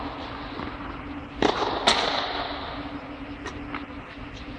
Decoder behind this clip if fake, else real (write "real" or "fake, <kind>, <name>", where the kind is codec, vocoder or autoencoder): real